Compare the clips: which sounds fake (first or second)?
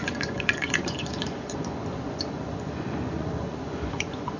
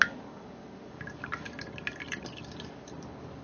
first